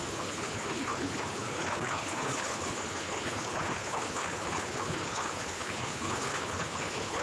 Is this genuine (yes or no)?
no